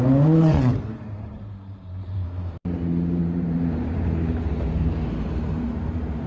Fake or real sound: fake